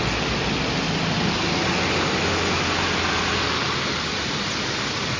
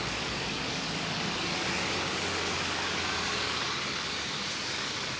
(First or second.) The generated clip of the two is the second